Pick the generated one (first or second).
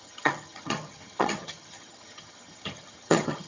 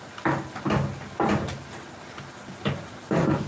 first